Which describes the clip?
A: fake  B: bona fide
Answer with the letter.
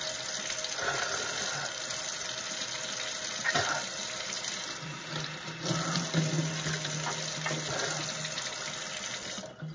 B